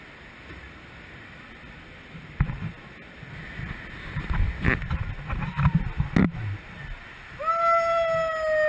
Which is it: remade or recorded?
recorded